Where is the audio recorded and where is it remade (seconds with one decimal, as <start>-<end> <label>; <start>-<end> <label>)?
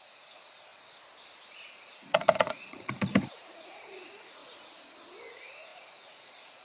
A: 0.0-0.7 remade; 0.7-1.8 recorded; 1.8-4.4 remade; 4.4-5.3 recorded; 5.3-6.6 remade